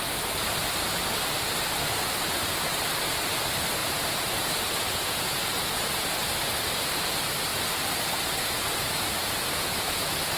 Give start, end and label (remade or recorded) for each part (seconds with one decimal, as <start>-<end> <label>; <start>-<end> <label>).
0.0-3.8 recorded; 3.8-6.3 remade; 6.3-7.5 recorded; 7.5-10.4 remade